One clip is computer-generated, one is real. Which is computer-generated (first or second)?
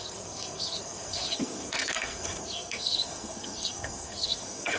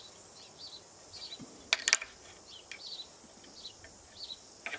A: first